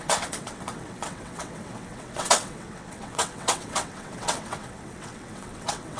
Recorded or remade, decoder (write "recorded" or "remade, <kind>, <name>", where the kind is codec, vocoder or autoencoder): remade, vocoder, WaveNeXt